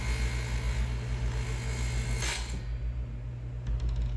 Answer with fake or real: real